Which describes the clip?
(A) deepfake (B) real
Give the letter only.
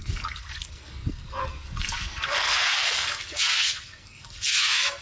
A